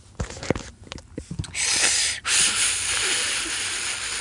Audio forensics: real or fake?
real